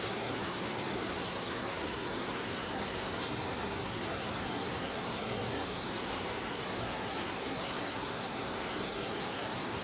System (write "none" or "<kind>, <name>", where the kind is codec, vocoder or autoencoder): codec, SNAC